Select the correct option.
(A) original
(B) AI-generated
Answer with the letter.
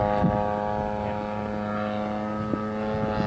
A